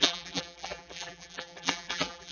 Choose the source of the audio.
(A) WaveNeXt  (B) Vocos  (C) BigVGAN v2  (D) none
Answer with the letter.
C